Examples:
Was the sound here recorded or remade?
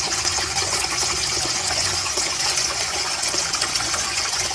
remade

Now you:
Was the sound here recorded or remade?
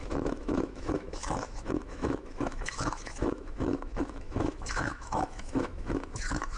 remade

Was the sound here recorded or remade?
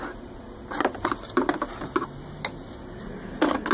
recorded